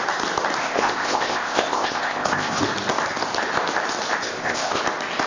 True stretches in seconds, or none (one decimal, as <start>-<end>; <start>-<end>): 0.0-0.6; 2.6-4.2; 4.8-5.3